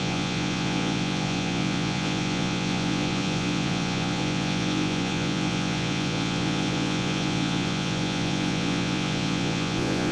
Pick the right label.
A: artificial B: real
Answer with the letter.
A